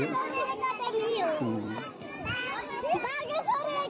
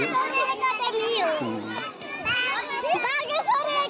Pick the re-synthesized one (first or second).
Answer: first